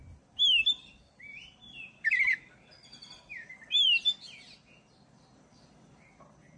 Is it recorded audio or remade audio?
recorded